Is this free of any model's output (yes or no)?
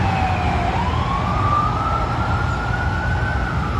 yes